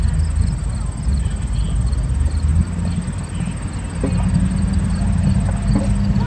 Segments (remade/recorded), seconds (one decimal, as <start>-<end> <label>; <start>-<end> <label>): 0.0-6.3 recorded